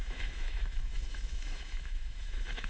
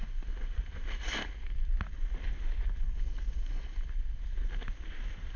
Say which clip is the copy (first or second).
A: first